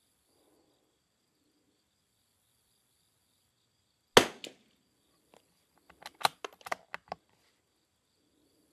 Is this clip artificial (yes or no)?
no